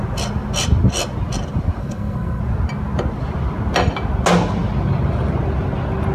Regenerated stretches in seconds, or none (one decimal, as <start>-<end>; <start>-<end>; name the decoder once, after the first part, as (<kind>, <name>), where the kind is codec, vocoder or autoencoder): 1.8-2.4 (codec, SNAC)